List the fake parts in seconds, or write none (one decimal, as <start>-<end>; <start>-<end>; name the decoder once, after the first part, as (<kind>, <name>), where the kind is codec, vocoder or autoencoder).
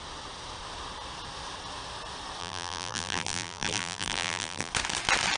2.4-4.7 (vocoder, BigVGAN v2)